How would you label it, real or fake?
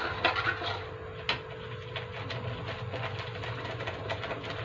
real